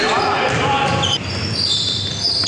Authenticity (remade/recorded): recorded